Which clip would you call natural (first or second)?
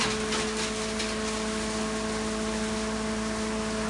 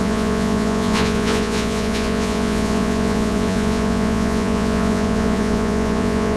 first